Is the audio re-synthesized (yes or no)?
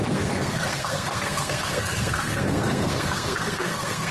yes